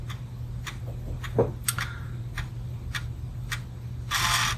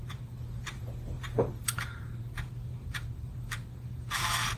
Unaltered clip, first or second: first